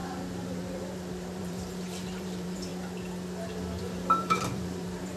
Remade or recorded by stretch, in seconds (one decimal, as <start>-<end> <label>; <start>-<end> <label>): 0.0-2.7 remade; 2.7-3.8 recorded; 3.8-5.2 remade